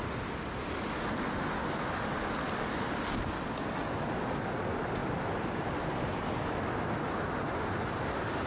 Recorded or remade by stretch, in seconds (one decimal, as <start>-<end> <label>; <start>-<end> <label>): 0.0-8.5 recorded